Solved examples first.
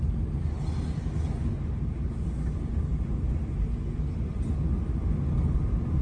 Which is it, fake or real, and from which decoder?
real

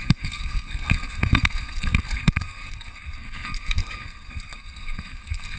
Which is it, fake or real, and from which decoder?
fake, codec, SNAC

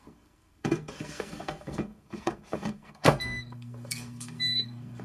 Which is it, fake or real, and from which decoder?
fake, codec, SNAC